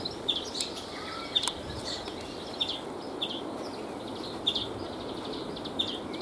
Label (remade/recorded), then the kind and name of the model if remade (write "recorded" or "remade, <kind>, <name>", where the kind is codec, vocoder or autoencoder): recorded